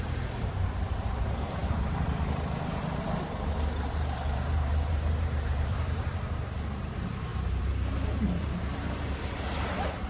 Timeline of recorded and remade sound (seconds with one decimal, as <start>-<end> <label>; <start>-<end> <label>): 0.0-10.1 remade